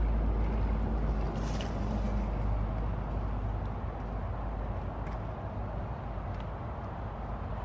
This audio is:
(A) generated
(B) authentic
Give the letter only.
B